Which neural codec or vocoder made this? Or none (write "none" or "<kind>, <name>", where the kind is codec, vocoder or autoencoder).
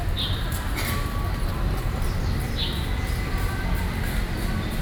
none